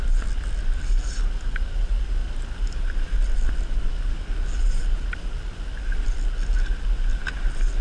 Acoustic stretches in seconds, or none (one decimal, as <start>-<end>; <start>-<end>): 0.0-7.8